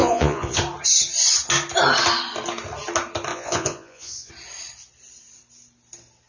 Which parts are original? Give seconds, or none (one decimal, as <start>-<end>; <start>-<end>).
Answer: 0.6-3.3; 4.3-6.3